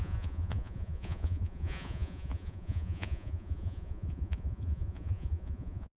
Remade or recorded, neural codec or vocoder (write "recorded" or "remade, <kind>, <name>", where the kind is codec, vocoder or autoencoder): remade, vocoder, Vocos